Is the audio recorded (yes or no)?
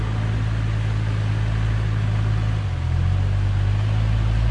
yes